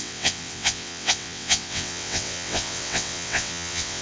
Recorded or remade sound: remade